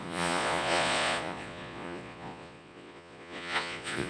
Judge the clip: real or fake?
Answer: fake